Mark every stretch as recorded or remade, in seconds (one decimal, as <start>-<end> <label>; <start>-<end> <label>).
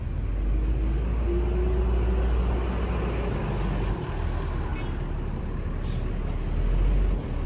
0.0-7.5 recorded